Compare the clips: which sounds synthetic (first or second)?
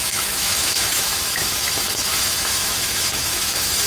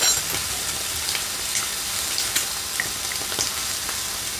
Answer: first